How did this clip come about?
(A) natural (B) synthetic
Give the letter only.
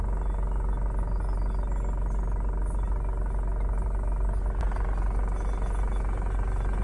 A